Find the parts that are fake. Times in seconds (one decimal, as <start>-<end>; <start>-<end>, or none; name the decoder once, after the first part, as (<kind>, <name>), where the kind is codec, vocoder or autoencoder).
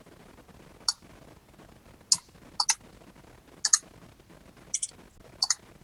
none